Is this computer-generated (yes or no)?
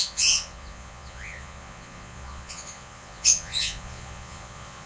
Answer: yes